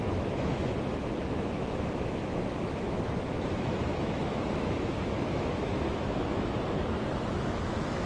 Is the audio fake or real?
fake